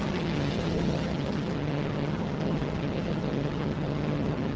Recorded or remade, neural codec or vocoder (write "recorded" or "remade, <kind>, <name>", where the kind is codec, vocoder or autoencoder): remade, vocoder, HiFi-GAN